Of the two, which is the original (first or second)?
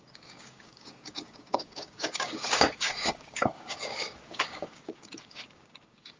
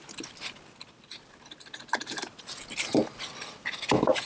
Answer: second